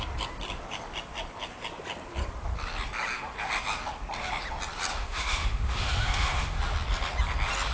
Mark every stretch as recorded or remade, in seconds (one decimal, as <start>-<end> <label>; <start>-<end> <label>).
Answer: 0.0-4.9 recorded; 4.9-6.6 remade; 6.6-7.7 recorded